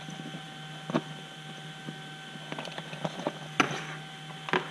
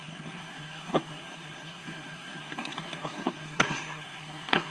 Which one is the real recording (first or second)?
first